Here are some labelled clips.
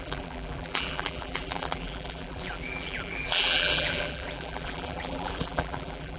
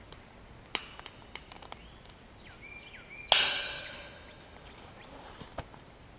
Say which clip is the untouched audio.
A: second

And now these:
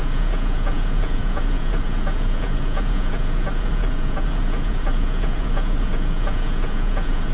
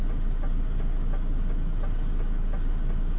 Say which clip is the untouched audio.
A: second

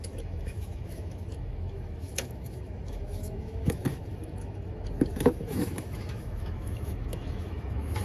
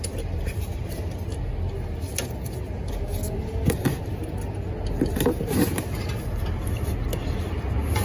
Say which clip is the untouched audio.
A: second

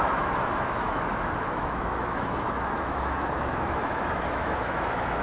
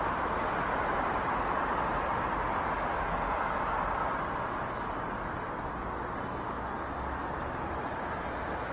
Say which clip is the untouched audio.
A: second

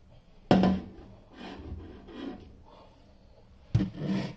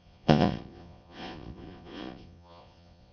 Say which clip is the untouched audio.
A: first